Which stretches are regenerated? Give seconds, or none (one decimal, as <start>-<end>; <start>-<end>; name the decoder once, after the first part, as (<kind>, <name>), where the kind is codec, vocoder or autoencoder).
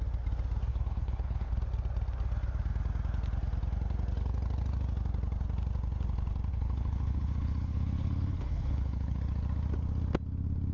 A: 0.7-1.6 (codec, HILCodec); 6.5-9.2